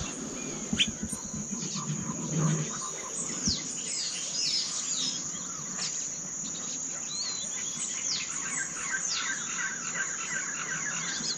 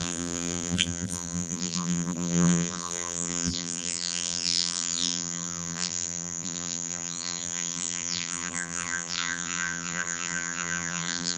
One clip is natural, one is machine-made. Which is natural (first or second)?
first